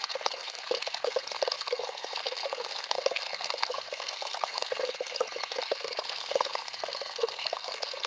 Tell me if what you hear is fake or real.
fake